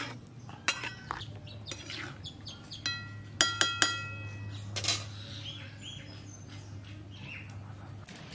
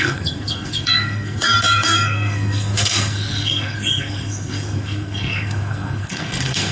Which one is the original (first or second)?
first